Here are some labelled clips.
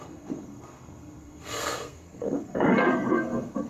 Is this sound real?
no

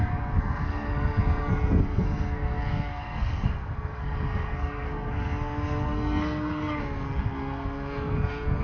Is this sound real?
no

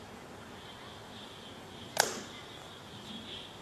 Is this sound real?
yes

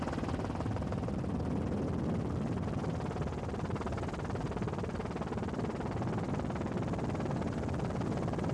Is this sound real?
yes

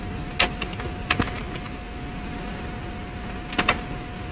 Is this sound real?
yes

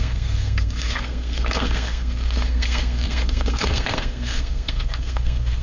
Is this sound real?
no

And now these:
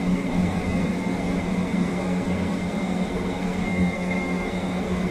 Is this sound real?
no